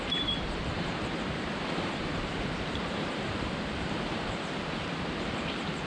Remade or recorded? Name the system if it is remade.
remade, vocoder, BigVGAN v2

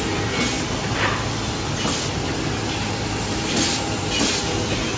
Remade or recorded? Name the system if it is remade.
recorded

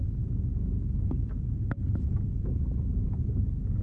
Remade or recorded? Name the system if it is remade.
recorded